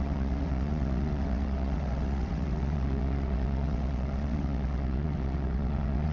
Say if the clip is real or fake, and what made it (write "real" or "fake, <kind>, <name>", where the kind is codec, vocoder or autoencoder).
fake, vocoder, WaveNeXt